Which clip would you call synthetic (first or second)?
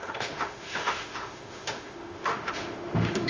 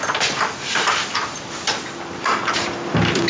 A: first